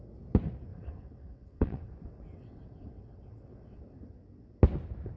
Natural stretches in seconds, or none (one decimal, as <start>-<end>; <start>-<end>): 0.0-0.7; 3.8-5.2